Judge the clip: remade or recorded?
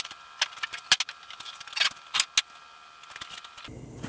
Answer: recorded